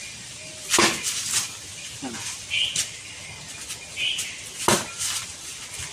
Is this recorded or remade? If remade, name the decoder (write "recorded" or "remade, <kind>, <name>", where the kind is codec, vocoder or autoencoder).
recorded